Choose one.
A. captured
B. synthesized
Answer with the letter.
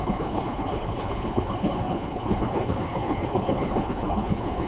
B